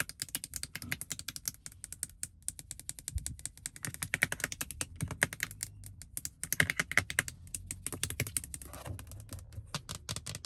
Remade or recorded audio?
recorded